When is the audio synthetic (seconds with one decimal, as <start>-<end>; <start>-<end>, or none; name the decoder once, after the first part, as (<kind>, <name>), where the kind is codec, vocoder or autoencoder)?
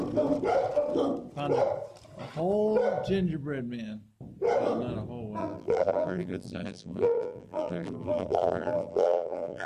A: 5.4-9.7 (vocoder, BigVGAN v2)